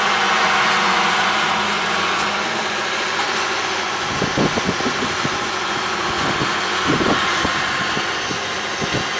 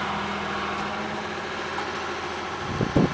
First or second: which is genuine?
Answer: second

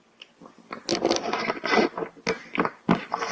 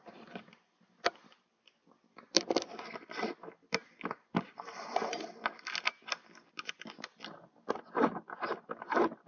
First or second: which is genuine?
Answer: first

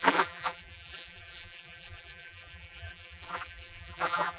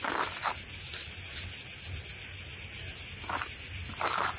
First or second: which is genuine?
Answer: second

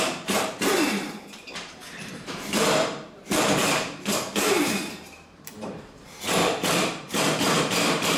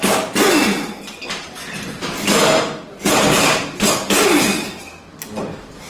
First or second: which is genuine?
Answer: second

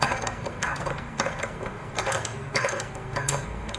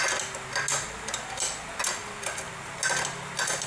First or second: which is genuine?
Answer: second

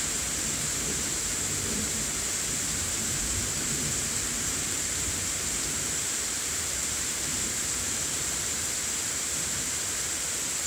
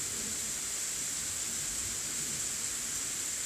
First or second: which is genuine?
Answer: second